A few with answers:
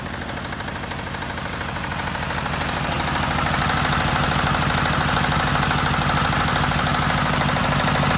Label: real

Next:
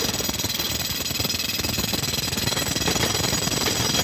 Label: real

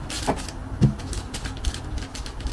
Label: real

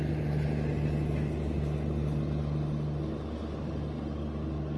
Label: real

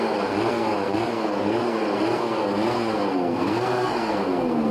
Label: fake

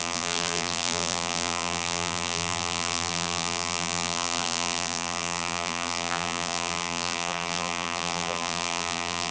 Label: fake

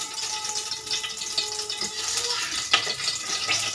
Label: real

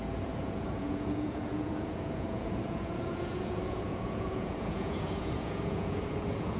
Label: fake